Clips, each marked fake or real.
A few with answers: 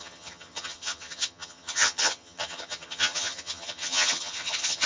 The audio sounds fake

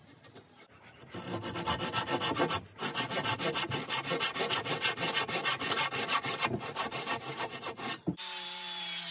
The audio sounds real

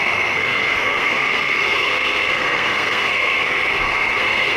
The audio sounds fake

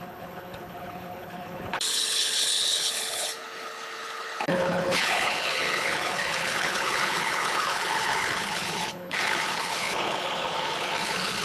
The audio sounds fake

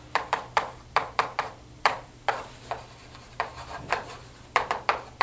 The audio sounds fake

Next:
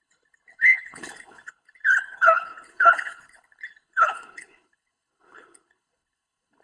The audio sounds fake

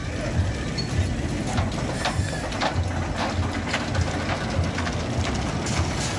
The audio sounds real